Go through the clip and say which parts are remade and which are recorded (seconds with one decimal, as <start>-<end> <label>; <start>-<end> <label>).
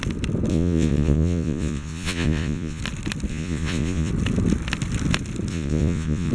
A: 0.0-0.5 recorded; 0.5-2.8 remade; 2.8-3.3 recorded; 3.3-4.1 remade; 4.1-5.5 recorded; 5.5-6.3 remade